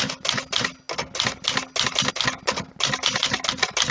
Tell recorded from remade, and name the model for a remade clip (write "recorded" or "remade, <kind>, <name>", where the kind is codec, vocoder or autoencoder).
recorded